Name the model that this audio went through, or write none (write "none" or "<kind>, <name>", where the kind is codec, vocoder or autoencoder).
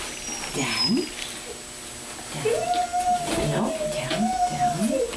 none